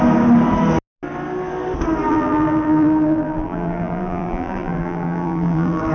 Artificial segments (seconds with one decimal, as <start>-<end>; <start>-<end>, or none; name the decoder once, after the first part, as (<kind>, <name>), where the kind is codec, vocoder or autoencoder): 2.1-5.9 (vocoder, BigVGAN v2)